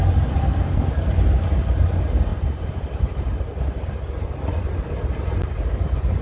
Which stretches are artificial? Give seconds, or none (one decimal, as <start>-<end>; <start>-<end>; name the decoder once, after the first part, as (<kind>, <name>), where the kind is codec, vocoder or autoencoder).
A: 0.4-1.1 (codec, SNAC)